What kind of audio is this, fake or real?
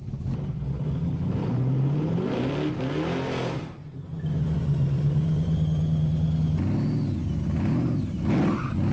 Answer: real